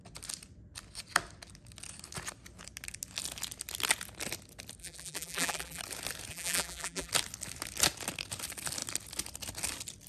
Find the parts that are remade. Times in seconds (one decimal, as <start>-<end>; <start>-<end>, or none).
4.8-5.8; 6.3-7.1